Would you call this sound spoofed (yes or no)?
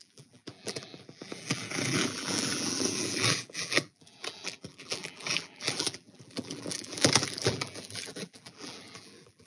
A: yes